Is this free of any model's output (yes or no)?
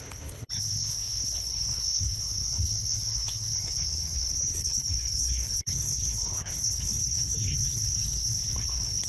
no